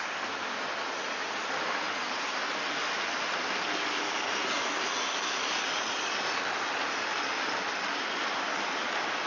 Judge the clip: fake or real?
real